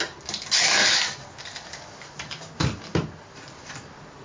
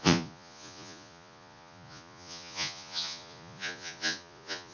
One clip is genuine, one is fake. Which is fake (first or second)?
second